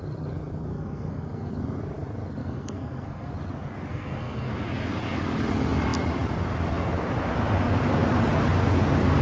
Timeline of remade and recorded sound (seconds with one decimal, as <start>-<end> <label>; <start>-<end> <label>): 0.0-0.7 recorded; 0.7-1.5 remade; 1.5-2.4 recorded; 2.4-3.3 remade; 3.3-3.9 recorded; 3.9-4.5 remade; 4.5-9.2 recorded